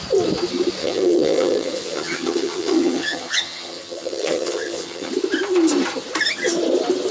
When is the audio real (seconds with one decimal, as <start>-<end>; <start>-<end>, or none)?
0.0-0.8; 5.1-7.1